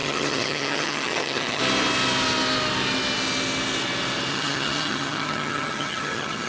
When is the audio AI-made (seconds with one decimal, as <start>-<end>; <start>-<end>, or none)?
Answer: 0.0-1.6; 4.3-6.5